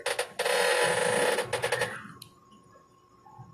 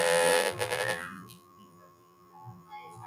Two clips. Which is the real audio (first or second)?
first